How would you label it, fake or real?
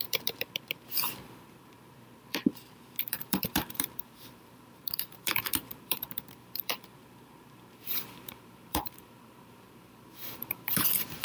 fake